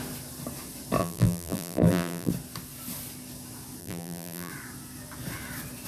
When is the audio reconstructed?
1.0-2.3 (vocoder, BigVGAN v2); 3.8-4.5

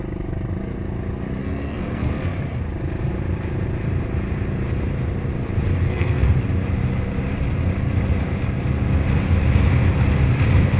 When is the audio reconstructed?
1.4-2.1 (codec, SNAC); 5.8-6.3

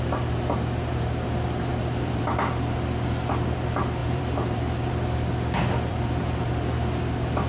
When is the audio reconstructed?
1.7-2.3 (vocoder, BigVGAN v2); 4.0-4.9; 5.9-6.5

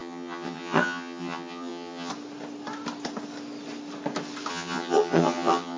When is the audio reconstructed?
0.0-2.1 (vocoder, HiFi-GAN); 4.5-5.8

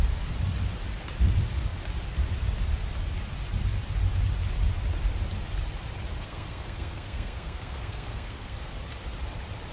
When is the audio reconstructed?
6.2-8.7 (codec, SNAC)

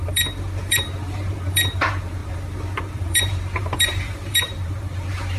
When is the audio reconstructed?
0.0-5.4 (vocoder, BigVGAN v2)